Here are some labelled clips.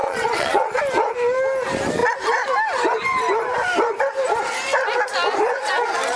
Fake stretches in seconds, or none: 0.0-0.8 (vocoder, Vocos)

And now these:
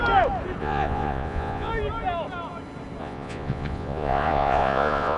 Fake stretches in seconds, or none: 0.6-1.7 (vocoder, Vocos); 3.0-5.2

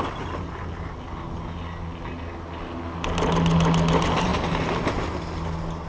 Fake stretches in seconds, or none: none